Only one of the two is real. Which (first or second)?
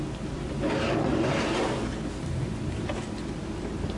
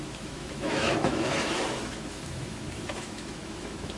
first